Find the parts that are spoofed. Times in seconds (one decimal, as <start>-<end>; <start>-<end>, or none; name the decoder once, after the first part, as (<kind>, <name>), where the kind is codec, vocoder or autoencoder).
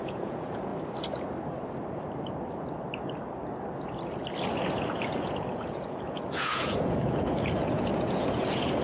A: 0.0-0.7 (vocoder, Vocos); 4.7-8.8